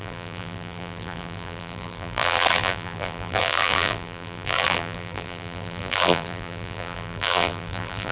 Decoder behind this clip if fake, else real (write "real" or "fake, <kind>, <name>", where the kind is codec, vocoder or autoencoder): fake, vocoder, BigVGAN v2